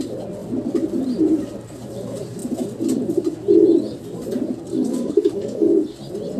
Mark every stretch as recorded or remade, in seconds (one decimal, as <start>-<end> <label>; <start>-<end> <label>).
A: 0.0-4.7 recorded; 4.7-5.7 remade; 5.7-6.4 recorded

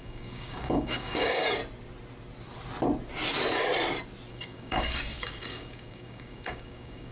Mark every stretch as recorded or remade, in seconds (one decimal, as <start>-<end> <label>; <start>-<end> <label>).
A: 0.0-1.6 remade; 1.6-4.3 recorded; 4.3-7.1 remade

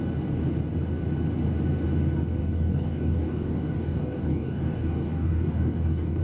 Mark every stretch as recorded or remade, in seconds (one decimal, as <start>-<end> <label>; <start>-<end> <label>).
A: 0.0-2.4 recorded; 2.4-6.2 remade

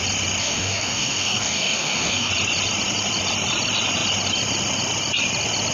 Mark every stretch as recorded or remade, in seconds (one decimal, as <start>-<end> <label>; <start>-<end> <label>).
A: 0.0-0.4 recorded; 0.4-2.3 remade; 2.3-5.7 recorded